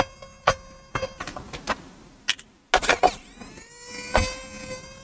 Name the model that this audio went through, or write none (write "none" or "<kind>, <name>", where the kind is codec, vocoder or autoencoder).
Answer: none